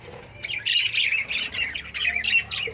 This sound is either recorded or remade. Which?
recorded